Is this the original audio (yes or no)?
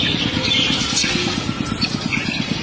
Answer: yes